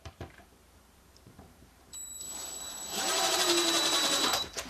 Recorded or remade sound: remade